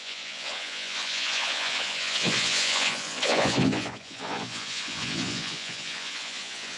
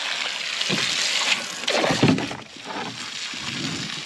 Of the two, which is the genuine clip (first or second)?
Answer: second